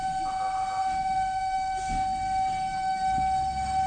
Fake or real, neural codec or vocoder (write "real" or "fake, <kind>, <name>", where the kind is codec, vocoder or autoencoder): real